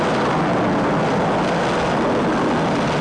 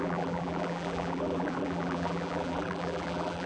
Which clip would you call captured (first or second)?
first